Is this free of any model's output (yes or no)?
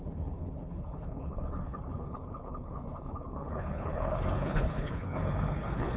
no